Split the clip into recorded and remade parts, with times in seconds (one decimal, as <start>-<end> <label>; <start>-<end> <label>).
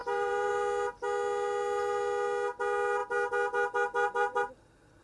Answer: 0.0-0.5 remade; 0.5-5.0 recorded